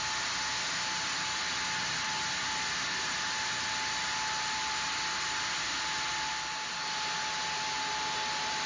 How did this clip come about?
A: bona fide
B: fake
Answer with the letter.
A